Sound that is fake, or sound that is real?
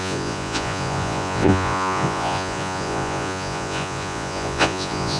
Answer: fake